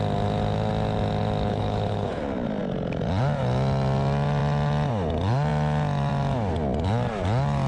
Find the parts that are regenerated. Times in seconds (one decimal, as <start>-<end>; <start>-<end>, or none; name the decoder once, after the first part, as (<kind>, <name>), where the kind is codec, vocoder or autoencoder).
1.5-2.2 (codec, HILCodec)